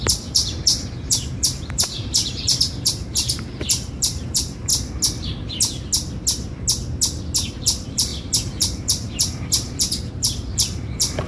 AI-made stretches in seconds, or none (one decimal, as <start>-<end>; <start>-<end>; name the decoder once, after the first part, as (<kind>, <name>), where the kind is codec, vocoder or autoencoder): 0.0-4.7 (vocoder, BigVGAN v2); 7.6-11.3